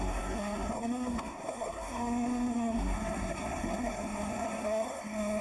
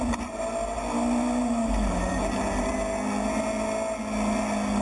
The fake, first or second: first